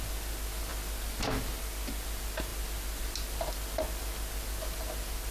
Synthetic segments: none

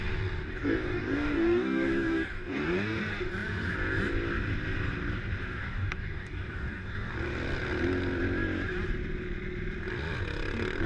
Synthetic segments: 0.5-3.0 (codec, DAC); 5.6-7.1

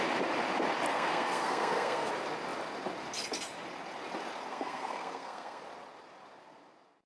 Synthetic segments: 0.9-2.1 (codec, SNAC); 4.5-5.6

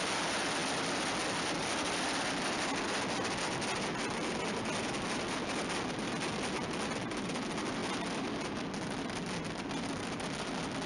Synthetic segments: none

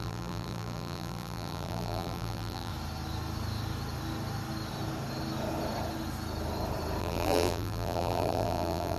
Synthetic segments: 0.0-2.7 (vocoder, BigVGAN v2); 7.0-9.0

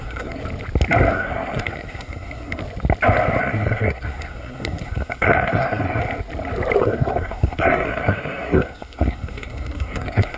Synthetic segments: 0.0-0.4 (codec, SNAC); 1.1-2.6; 3.4-6.0; 6.8-10.4